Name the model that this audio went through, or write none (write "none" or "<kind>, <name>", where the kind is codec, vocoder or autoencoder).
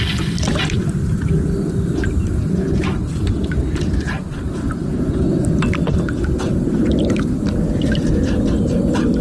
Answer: none